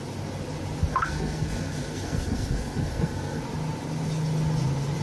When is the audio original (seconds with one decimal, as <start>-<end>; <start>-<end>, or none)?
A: 0.0-0.9; 3.4-5.0